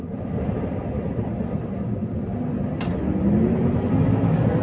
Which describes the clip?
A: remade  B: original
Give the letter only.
B